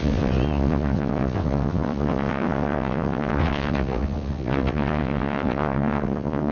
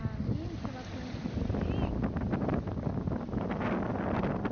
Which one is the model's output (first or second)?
first